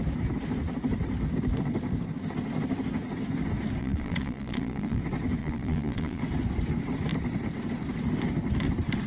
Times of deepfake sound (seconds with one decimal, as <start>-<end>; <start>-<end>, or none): 3.8-5.0; 5.4-6.2